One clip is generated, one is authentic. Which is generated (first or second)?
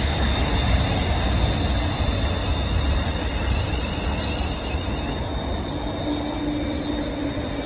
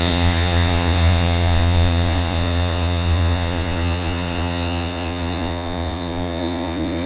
second